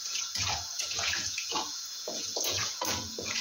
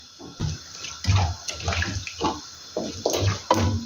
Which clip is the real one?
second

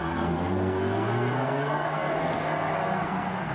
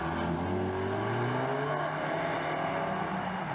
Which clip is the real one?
second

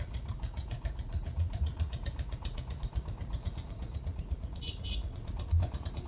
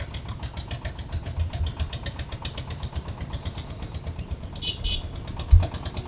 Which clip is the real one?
second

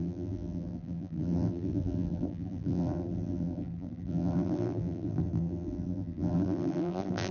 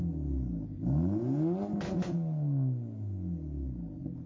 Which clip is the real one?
second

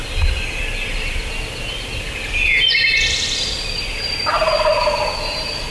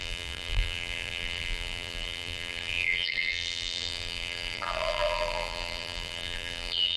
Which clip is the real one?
first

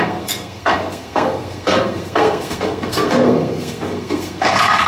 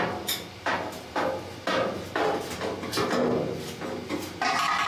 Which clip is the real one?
second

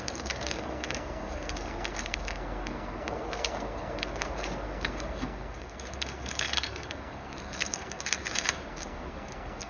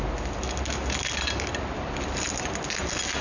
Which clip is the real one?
second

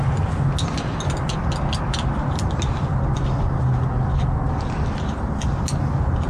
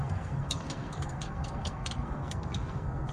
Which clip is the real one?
first